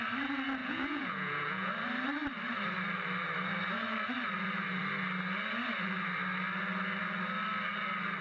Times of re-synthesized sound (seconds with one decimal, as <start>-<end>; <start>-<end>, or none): 0.6-1.7